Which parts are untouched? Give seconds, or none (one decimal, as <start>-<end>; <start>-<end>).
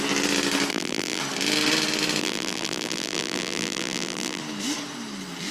0.0-0.7; 1.2-2.2; 4.4-5.5